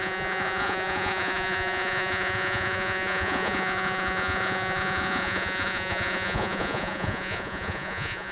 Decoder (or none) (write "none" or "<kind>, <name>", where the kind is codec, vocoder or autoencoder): vocoder, Vocos